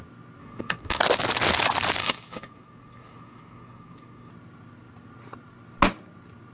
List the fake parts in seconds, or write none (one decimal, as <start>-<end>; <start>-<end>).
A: 0.4-1.0; 2.0-4.3